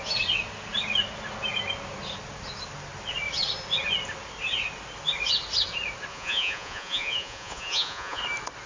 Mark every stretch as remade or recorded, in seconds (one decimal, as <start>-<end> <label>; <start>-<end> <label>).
0.0-6.1 recorded; 6.1-8.2 remade; 8.2-8.7 recorded